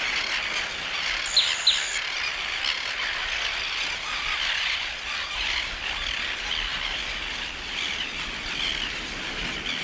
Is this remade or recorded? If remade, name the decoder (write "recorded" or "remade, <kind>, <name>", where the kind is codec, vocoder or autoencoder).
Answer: recorded